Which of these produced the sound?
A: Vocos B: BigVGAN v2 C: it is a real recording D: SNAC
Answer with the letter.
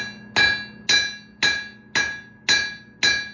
C